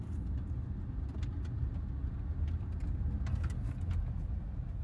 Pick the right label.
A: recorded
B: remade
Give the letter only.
A